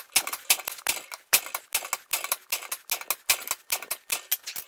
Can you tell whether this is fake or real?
real